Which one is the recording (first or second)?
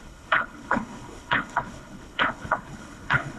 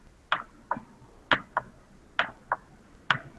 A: second